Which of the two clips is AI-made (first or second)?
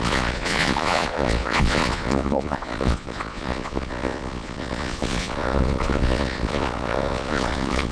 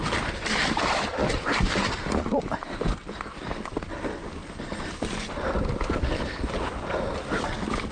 first